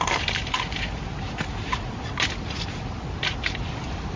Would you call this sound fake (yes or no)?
no